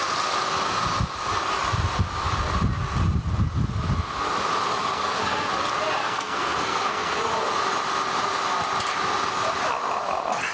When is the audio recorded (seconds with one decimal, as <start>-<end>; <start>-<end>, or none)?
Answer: 0.0-4.8; 5.5-6.0; 7.2-10.5